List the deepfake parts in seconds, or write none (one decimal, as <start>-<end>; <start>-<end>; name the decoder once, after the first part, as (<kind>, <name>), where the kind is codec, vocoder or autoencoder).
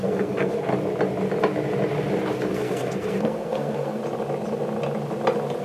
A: 0.0-0.7 (codec, SNAC); 2.5-4.0